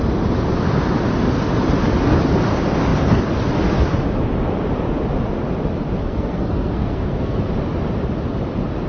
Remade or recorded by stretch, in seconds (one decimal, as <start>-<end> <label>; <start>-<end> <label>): 0.0-6.0 recorded; 6.0-7.4 remade; 7.4-8.9 recorded